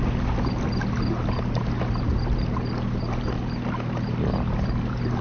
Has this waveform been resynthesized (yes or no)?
no